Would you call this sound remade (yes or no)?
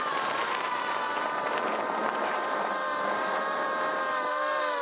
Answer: yes